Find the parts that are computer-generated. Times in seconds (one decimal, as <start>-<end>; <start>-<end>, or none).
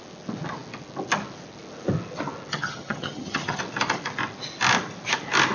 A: 2.5-3.6